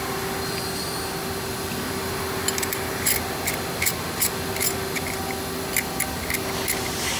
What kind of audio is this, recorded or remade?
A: recorded